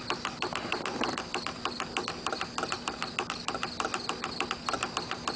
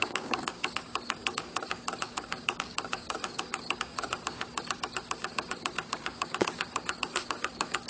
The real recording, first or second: first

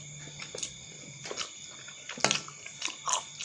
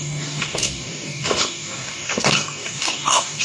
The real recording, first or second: first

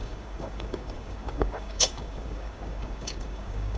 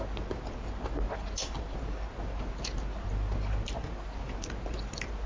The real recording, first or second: second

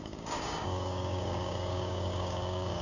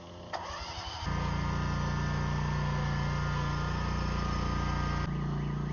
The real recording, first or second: second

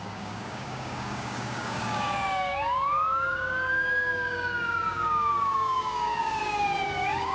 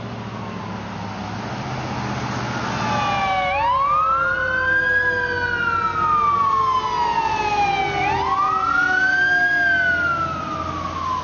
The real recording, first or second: second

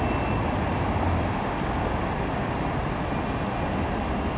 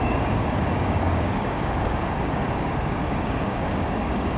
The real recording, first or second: first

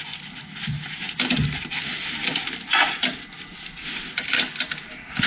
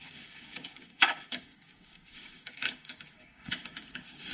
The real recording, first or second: first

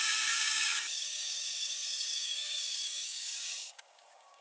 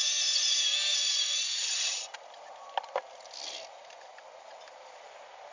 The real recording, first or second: second